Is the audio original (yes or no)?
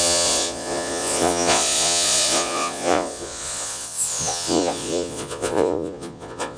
no